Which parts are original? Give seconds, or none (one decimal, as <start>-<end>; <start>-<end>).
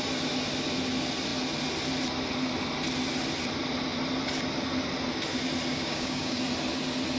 0.0-5.7; 6.4-7.2